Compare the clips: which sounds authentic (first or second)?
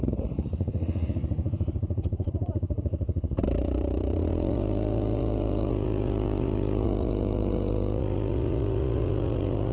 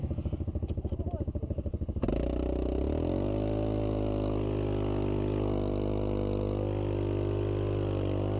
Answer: second